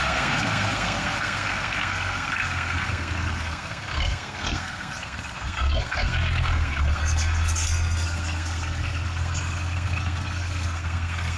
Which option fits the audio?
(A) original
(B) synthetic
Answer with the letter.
B